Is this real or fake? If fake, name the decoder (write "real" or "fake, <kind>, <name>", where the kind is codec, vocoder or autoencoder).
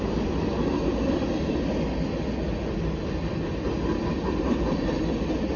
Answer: real